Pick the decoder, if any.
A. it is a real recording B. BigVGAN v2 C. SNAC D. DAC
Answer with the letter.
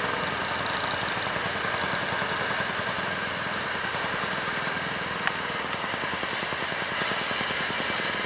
A